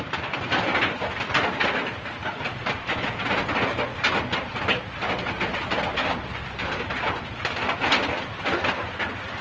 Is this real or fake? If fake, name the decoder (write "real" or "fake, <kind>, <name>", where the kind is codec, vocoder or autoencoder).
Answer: real